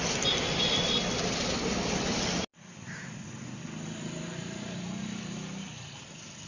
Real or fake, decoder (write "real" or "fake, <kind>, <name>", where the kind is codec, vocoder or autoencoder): real